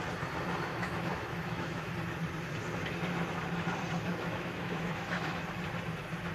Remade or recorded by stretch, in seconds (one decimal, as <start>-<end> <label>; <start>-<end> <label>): 0.0-0.7 recorded; 0.7-1.9 remade; 1.9-4.1 recorded; 4.1-5.4 remade; 5.4-6.3 recorded